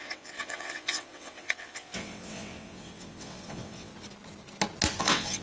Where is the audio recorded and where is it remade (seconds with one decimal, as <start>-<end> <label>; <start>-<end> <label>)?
0.0-3.9 remade; 3.9-5.0 recorded; 5.0-5.4 remade